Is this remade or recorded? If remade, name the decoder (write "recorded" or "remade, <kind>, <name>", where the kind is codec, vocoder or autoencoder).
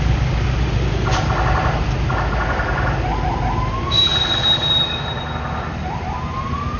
recorded